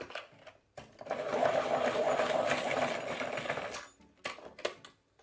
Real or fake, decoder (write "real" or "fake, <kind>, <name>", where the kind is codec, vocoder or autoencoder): real